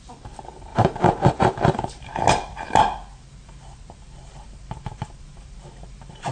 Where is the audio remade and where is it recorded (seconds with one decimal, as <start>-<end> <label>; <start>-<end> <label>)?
0.0-6.3 remade